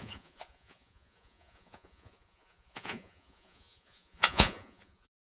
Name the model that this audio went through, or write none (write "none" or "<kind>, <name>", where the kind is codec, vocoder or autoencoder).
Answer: vocoder, Vocos